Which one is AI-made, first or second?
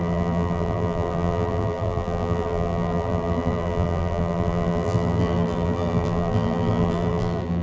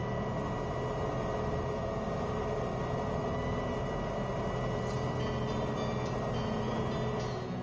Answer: first